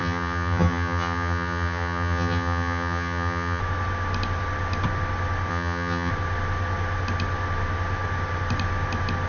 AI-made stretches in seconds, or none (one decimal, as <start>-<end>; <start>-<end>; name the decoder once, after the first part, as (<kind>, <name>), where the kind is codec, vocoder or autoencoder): 0.0-3.6 (vocoder, HiFi-GAN); 5.5-6.1